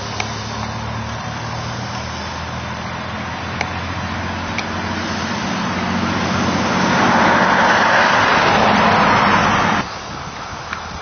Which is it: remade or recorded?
recorded